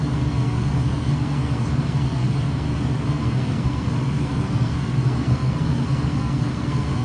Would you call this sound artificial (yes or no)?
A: yes